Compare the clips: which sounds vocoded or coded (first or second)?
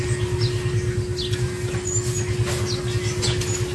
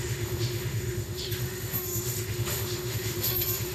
second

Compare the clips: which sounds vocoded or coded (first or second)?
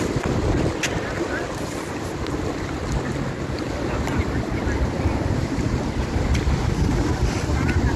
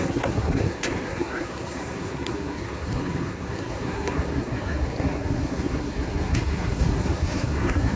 second